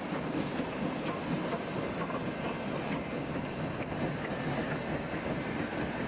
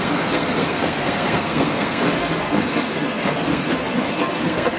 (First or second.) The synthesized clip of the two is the second